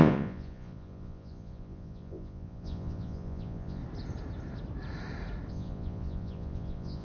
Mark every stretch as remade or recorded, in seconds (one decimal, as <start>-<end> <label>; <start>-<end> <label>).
0.0-3.8 remade; 3.8-5.5 recorded; 5.5-7.0 remade